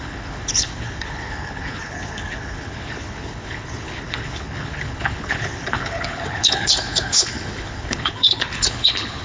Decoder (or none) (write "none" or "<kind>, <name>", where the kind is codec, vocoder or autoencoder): codec, HILCodec